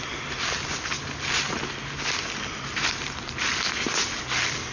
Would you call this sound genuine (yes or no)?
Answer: yes